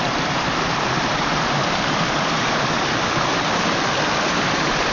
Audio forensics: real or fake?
fake